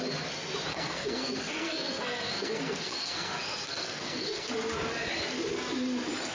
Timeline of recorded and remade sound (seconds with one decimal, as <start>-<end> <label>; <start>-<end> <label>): 0.0-0.7 recorded; 0.7-4.5 remade; 4.5-6.3 recorded